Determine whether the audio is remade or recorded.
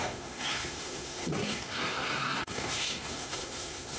remade